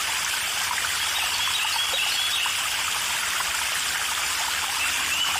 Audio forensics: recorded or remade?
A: recorded